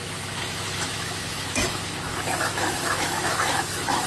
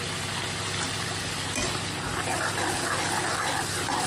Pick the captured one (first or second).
second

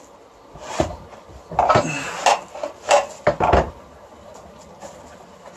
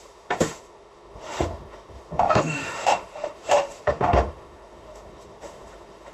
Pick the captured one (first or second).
first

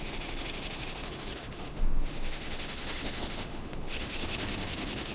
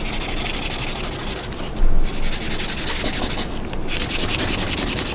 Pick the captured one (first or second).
second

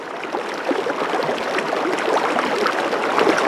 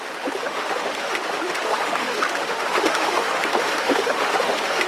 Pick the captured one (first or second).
first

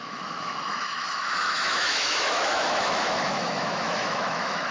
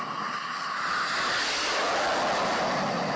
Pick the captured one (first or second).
second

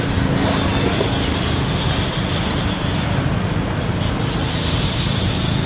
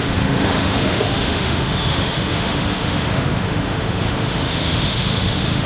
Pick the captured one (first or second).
first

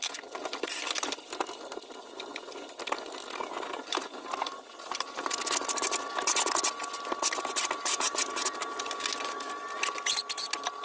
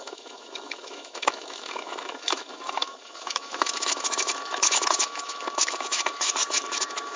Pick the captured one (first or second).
first